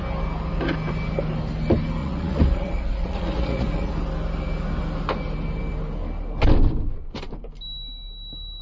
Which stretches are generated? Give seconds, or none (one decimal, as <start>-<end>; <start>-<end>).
2.0-3.9